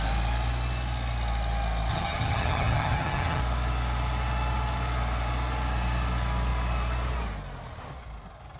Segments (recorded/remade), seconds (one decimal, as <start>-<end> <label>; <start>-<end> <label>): 0.0-1.9 recorded; 1.9-3.4 remade; 3.4-8.6 recorded